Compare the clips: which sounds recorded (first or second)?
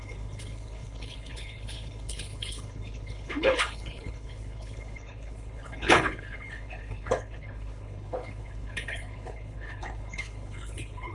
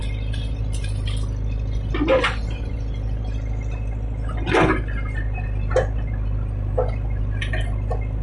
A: second